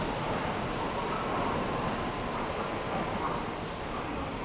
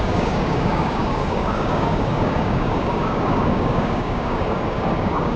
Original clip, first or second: first